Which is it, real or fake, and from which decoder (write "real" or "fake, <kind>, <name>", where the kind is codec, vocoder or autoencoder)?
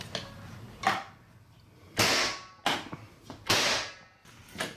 real